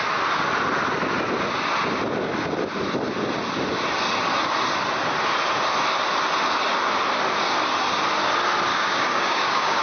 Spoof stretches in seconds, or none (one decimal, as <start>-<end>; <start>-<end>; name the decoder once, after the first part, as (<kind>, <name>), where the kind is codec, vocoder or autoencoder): 8.7-9.8 (codec, DAC)